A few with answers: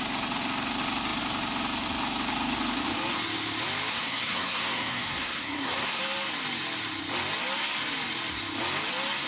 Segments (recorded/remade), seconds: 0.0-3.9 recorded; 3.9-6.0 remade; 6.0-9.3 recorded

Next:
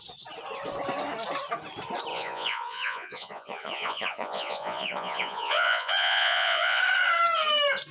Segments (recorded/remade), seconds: 0.0-2.1 recorded; 2.1-6.8 remade; 6.8-7.9 recorded